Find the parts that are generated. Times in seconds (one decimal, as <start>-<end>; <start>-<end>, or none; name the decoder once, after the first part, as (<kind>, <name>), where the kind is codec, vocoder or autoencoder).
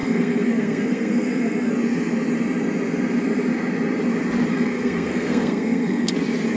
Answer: 0.0-1.7 (codec, SNAC); 4.5-6.1